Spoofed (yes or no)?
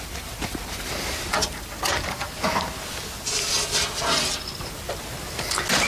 no